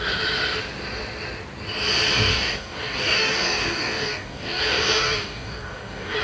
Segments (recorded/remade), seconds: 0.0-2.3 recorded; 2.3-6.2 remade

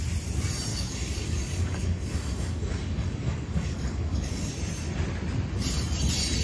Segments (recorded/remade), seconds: 0.0-0.7 recorded; 0.7-4.5 remade; 4.5-6.4 recorded